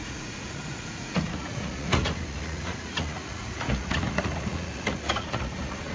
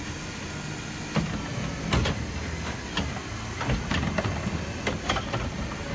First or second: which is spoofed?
first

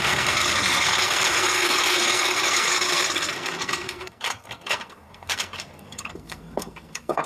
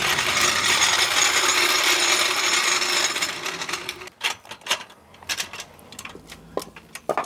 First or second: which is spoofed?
first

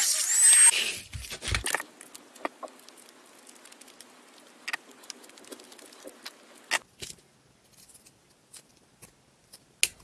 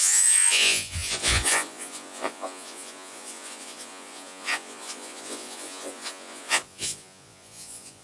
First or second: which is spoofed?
second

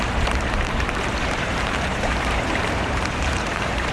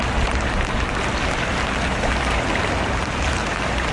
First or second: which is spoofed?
first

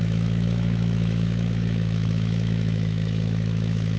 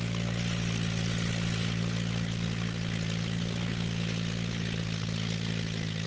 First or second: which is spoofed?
first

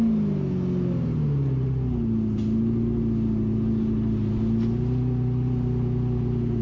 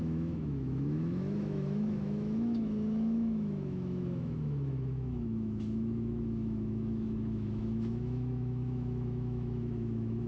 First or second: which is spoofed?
second